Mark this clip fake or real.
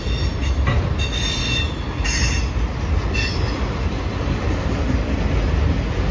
real